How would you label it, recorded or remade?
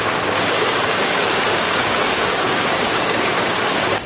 remade